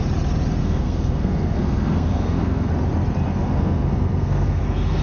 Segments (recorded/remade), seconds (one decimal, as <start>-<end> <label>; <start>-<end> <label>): 0.0-0.6 recorded; 0.6-2.7 remade; 2.7-3.3 recorded; 3.3-5.0 remade